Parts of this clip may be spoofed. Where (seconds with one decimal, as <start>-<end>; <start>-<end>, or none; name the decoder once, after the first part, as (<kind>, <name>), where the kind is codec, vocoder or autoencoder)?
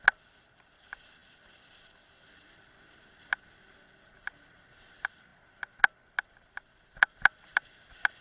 none